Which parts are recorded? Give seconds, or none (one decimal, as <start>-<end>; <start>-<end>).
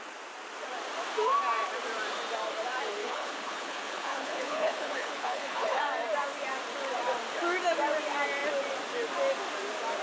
0.0-3.0; 5.8-10.0